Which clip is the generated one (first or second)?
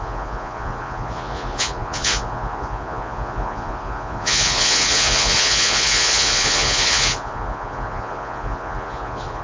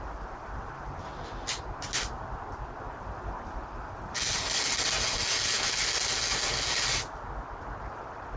first